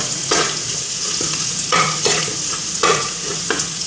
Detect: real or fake fake